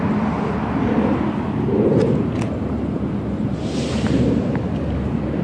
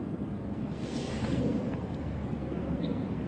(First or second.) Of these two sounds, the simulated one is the second